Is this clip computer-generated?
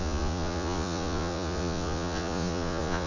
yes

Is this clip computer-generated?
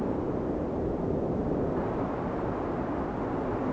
no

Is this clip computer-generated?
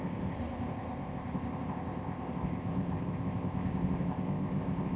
yes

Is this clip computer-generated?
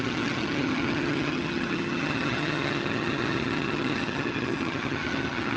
yes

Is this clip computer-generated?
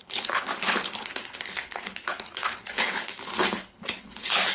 yes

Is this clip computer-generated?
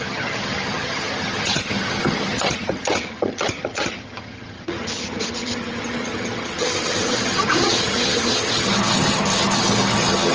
yes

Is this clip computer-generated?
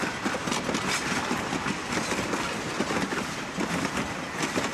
no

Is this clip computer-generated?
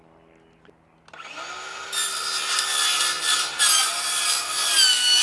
no